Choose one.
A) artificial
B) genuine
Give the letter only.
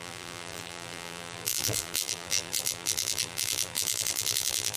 A